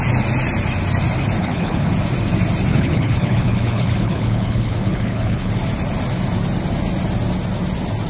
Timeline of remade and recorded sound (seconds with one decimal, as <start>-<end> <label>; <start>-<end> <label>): 0.0-1.4 recorded; 1.4-1.9 remade; 1.9-2.7 recorded; 2.7-5.5 remade; 5.5-8.1 recorded